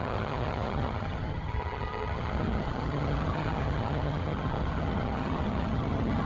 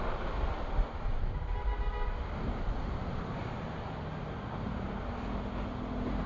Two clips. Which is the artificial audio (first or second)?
first